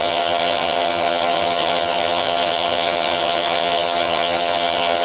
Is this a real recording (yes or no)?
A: no